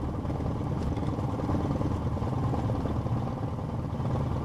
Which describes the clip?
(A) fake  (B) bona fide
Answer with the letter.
B